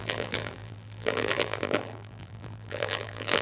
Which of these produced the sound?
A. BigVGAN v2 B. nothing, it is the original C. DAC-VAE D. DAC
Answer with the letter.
A